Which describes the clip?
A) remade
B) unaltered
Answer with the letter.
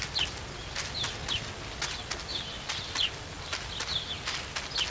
B